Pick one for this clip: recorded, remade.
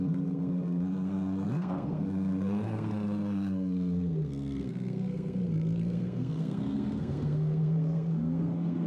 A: remade